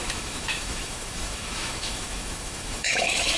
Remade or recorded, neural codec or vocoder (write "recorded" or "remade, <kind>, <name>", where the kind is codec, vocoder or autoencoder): remade, autoencoder, DAC-VAE